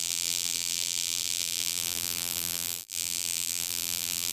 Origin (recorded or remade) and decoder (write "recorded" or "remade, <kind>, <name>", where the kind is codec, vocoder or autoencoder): remade, vocoder, BigVGAN v2